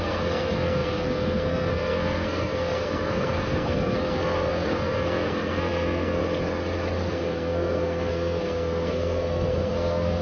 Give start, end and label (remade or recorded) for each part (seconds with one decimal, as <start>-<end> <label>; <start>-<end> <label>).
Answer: 0.0-6.2 remade; 6.2-7.1 recorded; 7.1-10.2 remade